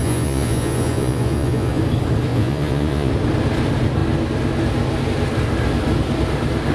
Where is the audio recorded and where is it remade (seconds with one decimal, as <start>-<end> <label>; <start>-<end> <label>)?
0.0-1.8 remade; 1.8-2.3 recorded; 2.3-3.1 remade; 3.1-6.7 recorded